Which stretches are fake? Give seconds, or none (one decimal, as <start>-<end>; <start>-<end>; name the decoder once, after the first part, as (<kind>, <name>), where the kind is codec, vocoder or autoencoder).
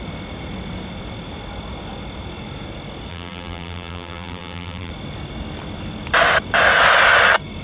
3.1-4.9 (vocoder, BigVGAN v2)